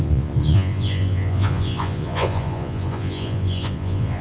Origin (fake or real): fake